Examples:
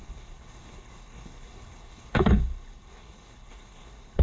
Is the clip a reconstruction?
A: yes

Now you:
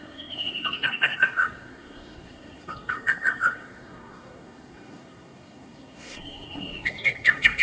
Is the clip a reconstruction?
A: yes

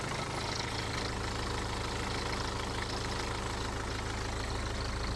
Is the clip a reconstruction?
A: no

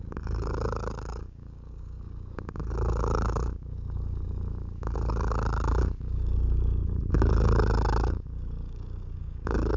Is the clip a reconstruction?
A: yes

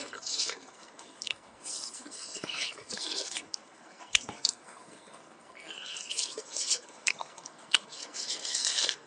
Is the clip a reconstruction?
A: yes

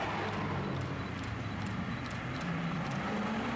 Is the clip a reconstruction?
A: no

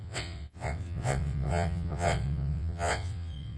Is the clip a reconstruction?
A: yes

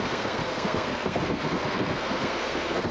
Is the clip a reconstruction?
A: yes